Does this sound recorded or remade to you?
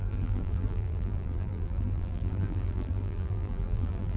remade